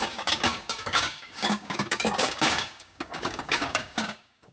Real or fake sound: fake